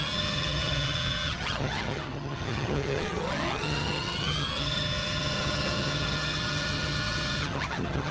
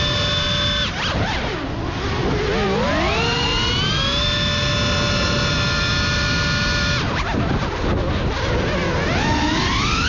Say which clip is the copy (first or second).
first